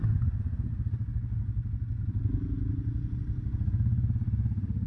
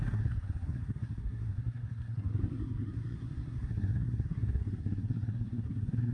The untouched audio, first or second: first